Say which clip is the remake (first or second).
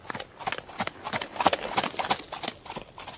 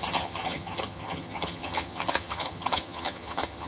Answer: second